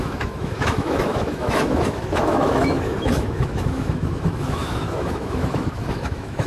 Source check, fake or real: fake